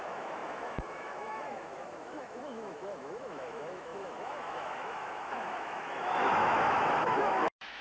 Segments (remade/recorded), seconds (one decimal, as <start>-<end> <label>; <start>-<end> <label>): 0.0-7.8 remade